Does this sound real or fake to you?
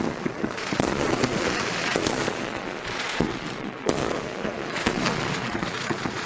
fake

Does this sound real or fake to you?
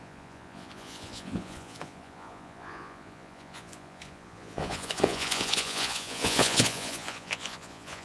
fake